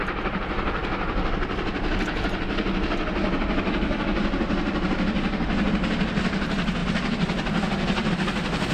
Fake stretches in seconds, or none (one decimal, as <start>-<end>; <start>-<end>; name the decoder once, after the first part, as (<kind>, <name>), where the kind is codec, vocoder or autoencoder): none